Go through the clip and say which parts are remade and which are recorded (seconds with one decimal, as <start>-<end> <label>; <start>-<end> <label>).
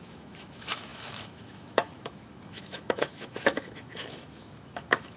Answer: 0.0-5.2 remade